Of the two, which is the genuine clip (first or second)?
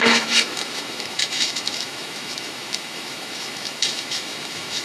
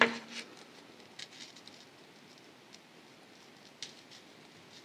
second